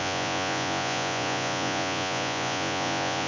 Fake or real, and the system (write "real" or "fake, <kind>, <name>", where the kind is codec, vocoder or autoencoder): fake, vocoder, Vocos